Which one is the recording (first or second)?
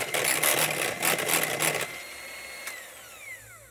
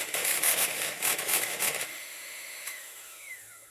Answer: first